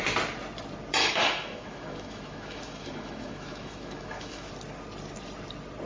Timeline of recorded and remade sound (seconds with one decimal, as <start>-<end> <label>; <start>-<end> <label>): 0.0-1.0 recorded; 1.0-4.5 remade; 4.5-5.9 recorded